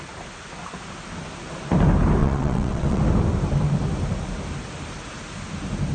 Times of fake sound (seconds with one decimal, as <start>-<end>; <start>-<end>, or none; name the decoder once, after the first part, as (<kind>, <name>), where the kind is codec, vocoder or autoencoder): 2.2-3.0 (vocoder, WaveNeXt)